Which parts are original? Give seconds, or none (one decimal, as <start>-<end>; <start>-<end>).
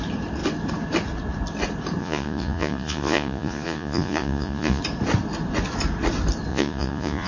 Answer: 0.0-2.0; 4.8-6.5